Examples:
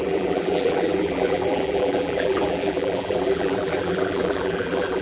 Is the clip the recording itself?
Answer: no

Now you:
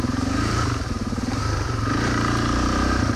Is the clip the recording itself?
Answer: no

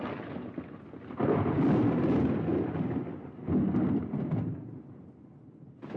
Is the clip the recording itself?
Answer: yes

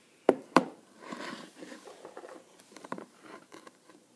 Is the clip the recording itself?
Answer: no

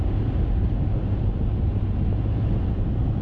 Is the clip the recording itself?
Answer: no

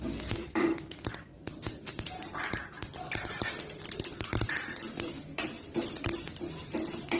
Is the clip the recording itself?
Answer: no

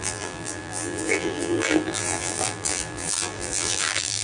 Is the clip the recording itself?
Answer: no